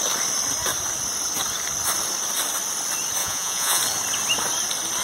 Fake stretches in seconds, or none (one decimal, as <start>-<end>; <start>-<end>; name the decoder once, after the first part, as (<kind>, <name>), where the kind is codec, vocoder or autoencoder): 3.2-3.8 (vocoder, Vocos)